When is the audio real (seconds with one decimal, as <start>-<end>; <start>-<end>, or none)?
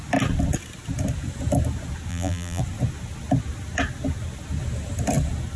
0.0-2.1; 2.6-5.6